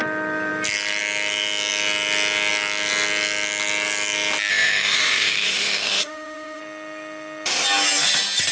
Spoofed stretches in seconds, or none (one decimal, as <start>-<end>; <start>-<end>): 4.5-6.6